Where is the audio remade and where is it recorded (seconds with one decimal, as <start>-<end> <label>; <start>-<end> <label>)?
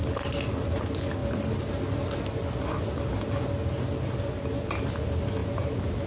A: 0.0-6.1 recorded